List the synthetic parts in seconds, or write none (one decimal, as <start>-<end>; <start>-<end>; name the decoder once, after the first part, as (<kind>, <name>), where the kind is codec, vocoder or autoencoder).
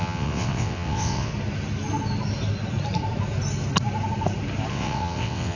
0.0-1.3 (vocoder, WaveNeXt); 4.7-5.6